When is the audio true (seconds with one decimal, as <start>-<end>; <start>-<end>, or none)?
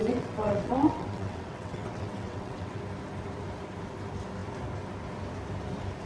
2.8-6.1